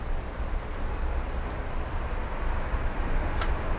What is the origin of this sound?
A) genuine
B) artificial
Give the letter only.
A